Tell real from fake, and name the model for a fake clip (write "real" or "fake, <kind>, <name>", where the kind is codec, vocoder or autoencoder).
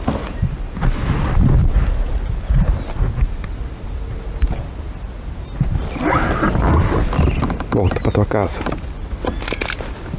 real